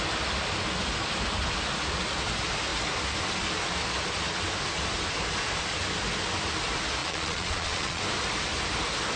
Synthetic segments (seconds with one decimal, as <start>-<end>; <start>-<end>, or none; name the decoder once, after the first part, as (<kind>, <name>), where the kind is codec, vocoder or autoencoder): 7.0-8.0 (vocoder, Vocos)